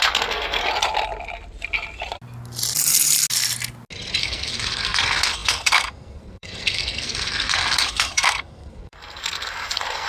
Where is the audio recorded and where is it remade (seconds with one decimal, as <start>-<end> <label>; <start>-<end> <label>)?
0.0-0.6 remade; 0.6-4.2 recorded; 4.2-10.1 remade